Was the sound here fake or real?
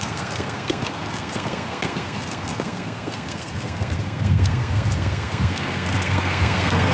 fake